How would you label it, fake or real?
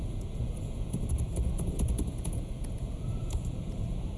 fake